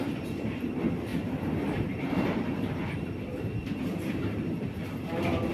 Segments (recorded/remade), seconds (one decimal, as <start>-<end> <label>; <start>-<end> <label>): 0.0-1.1 recorded; 1.1-2.7 remade; 2.7-3.3 recorded; 3.3-4.7 remade; 4.7-5.5 recorded